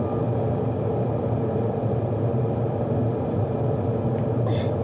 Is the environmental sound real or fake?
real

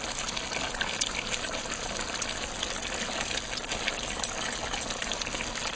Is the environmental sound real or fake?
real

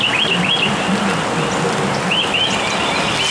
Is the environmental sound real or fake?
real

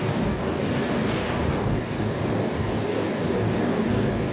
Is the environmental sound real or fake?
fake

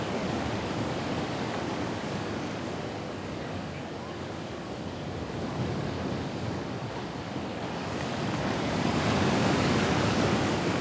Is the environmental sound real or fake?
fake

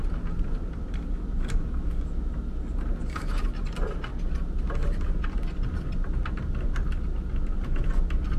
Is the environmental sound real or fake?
real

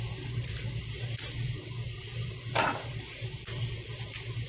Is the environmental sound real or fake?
real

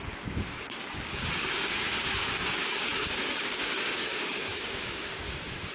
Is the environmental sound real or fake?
fake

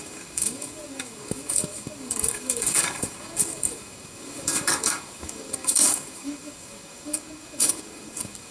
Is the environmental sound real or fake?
fake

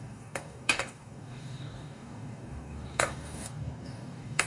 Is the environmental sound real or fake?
fake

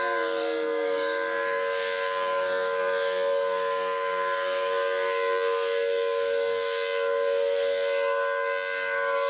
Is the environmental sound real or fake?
fake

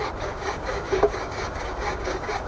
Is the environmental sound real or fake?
fake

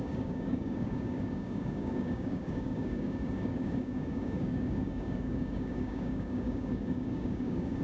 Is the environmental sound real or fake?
fake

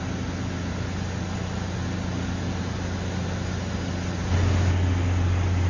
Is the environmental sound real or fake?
real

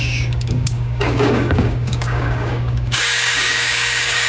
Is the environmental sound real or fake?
fake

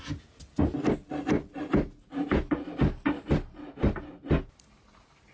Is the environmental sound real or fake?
real